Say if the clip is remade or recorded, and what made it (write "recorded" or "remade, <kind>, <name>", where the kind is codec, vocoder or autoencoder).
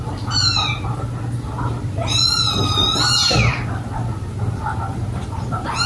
recorded